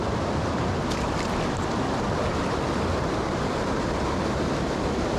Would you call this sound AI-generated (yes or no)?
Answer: no